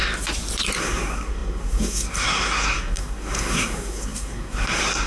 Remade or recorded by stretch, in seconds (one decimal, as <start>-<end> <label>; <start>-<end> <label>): 0.0-0.8 recorded; 0.8-5.1 remade